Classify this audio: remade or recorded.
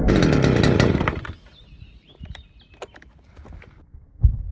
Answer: recorded